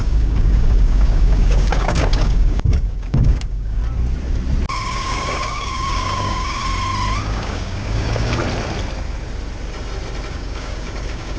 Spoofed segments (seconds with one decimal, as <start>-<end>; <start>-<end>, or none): 0.0-3.8; 4.7-6.6; 7.2-8.4; 10.3-11.4